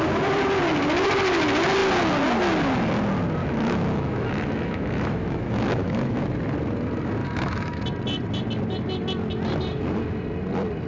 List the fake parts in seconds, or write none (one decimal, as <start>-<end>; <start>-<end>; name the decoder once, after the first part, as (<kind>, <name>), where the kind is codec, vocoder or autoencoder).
3.4-6.2 (autoencoder, DAC-VAE); 7.2-7.8